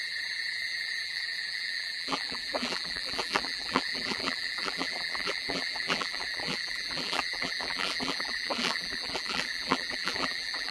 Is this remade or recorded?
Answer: remade